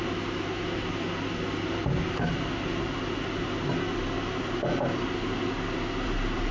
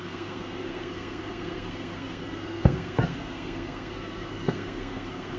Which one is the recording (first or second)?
first